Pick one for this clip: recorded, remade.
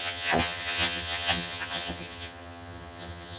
remade